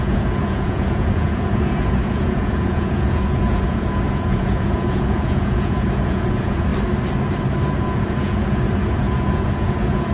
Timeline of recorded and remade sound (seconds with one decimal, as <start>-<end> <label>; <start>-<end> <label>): 0.0-6.7 remade; 6.7-7.8 recorded; 7.8-10.1 remade